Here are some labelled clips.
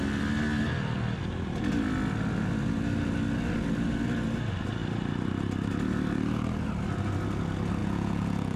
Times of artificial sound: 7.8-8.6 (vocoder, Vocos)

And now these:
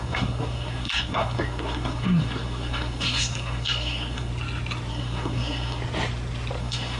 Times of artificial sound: 0.0-4.3 (codec, SNAC); 4.9-5.8; 6.6-7.0

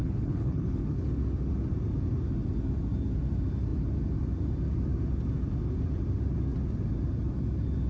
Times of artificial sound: 0.0-1.1 (codec, HILCodec)

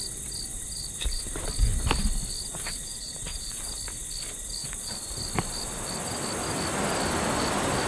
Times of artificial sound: 2.5-3.7 (vocoder, Vocos); 4.6-5.1

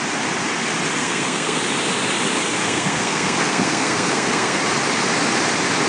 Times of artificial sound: 1.0-1.6 (codec, SNAC); 2.6-4.6

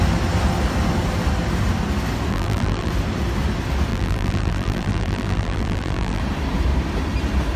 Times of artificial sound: 2.3-2.9 (vocoder, BigVGAN v2); 3.9-6.2

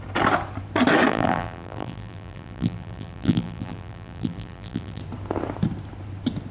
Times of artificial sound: 1.1-5.0 (vocoder, BigVGAN v2)

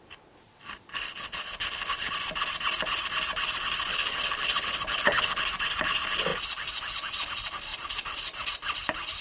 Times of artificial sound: 0.9-2.1 (codec, HILCodec); 3.9-5.4